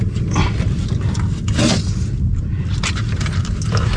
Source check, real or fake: real